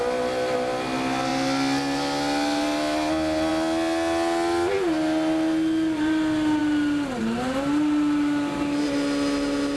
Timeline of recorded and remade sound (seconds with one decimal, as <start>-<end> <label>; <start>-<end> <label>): 0.0-9.8 recorded